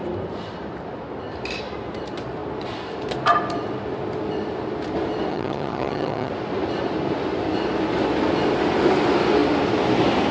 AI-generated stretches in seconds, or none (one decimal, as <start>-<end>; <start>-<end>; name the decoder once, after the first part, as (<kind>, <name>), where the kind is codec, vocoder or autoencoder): 5.3-6.3 (vocoder, HiFi-GAN)